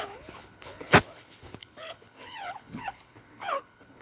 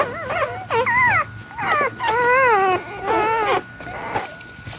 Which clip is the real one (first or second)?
second